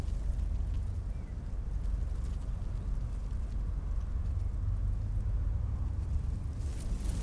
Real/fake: real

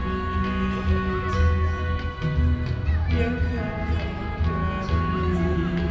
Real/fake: real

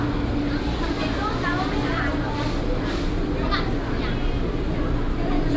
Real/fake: real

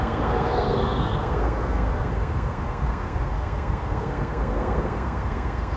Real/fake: fake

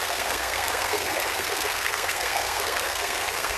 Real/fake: fake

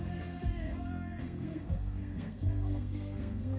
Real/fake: fake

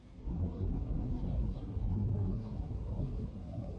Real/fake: fake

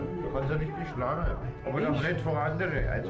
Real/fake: real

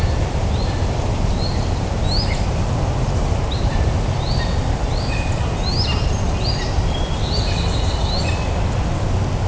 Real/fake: real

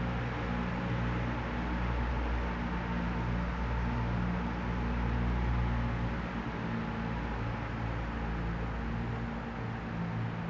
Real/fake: real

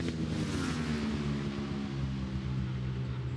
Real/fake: real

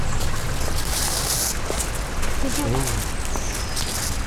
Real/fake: real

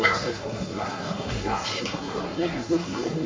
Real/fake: fake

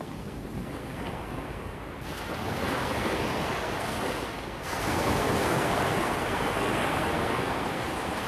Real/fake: fake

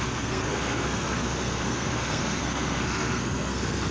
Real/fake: fake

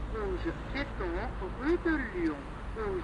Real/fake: real